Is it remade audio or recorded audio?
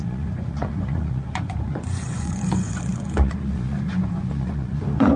remade